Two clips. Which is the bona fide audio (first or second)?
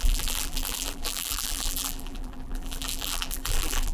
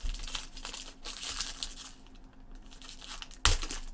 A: second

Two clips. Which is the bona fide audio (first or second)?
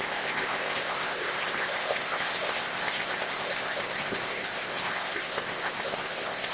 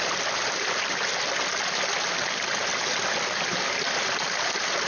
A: second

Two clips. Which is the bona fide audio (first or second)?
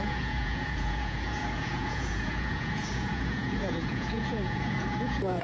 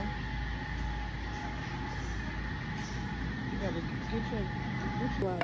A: second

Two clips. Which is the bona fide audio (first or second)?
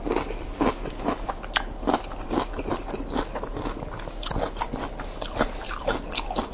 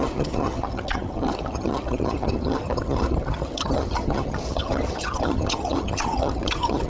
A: first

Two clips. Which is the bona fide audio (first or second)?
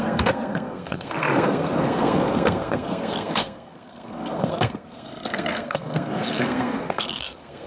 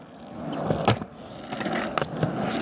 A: second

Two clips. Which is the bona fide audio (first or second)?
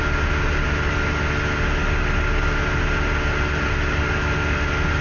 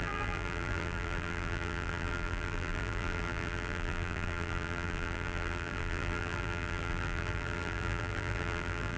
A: first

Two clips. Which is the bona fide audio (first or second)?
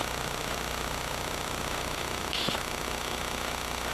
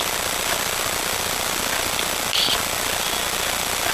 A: second